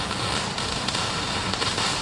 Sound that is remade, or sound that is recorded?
remade